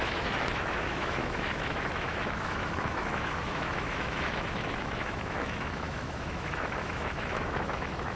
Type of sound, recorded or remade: remade